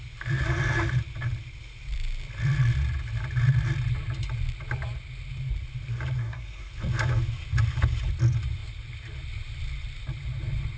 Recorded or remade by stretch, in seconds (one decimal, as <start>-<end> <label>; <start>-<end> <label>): 0.0-6.2 recorded; 6.2-6.7 remade; 6.7-10.8 recorded